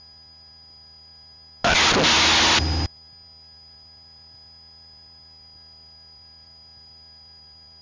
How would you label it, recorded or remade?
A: recorded